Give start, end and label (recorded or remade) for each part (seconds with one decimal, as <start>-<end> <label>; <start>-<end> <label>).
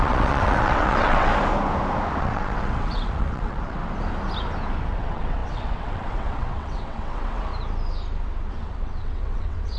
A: 0.0-1.3 remade; 1.3-2.2 recorded; 2.2-3.8 remade; 3.8-4.9 recorded; 4.9-7.5 remade; 7.5-8.5 recorded; 8.5-9.8 remade